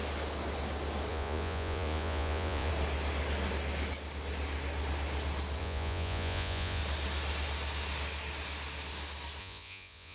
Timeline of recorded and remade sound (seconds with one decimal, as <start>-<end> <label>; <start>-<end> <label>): 0.0-1.1 recorded; 1.1-2.7 remade; 2.7-5.6 recorded; 5.6-6.8 remade; 6.8-9.4 recorded; 9.4-10.1 remade